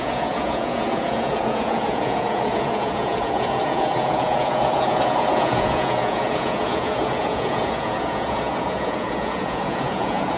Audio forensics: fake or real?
fake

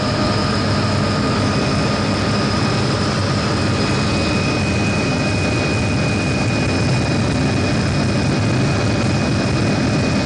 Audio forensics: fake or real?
real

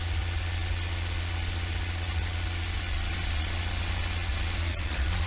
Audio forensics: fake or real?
fake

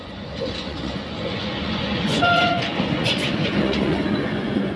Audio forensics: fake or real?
fake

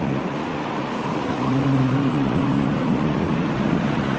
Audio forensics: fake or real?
fake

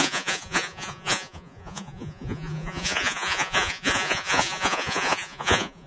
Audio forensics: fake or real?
fake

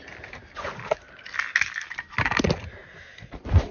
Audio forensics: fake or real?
real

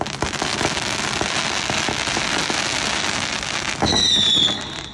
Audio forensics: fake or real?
real